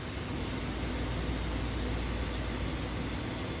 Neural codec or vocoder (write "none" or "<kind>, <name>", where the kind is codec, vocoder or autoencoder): none